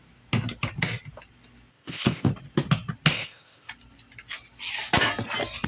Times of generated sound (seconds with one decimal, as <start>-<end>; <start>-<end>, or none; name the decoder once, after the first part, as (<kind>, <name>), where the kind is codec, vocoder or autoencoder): 1.7-2.3 (codec, ZipCodec); 3.1-3.7